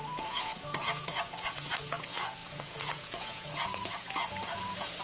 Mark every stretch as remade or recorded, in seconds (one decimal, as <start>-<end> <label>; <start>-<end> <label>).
0.0-5.0 remade